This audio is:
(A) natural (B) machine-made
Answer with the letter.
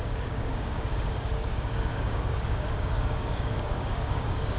B